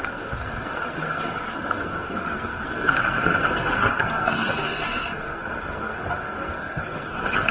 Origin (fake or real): fake